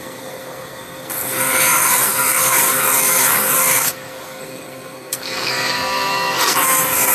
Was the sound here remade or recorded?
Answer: remade